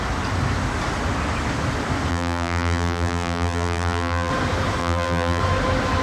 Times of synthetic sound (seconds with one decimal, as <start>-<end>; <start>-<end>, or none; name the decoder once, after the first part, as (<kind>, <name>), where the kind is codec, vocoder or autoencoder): 2.1-4.3 (vocoder, BigVGAN v2); 4.8-5.4